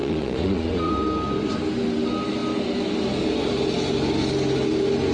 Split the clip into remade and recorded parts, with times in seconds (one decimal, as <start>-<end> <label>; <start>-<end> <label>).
0.0-0.9 remade; 0.9-5.1 recorded